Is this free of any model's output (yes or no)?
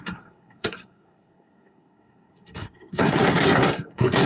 no